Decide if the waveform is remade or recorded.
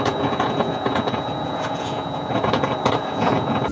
remade